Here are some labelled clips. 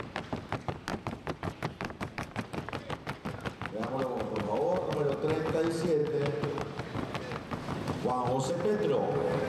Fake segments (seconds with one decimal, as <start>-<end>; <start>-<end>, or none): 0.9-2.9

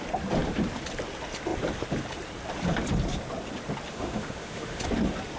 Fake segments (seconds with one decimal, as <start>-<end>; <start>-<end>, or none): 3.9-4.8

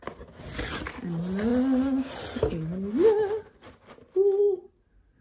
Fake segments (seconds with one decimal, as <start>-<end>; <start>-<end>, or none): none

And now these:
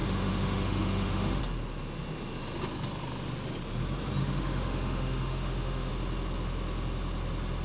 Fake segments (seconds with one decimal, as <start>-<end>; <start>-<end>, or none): 0.0-1.4; 4.2-5.9

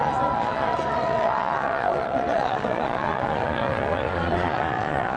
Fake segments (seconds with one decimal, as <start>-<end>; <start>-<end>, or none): 0.0-5.2